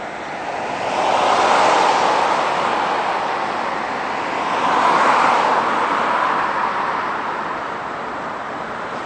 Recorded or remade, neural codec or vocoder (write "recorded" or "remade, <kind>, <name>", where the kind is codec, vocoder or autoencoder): remade, vocoder, BigVGAN v2